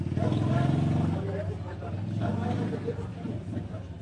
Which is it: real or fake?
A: real